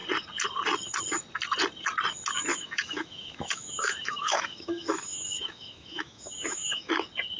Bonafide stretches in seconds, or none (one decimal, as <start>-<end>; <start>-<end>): 0.0-2.5; 6.9-7.4